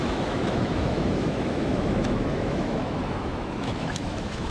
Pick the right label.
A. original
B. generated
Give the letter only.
B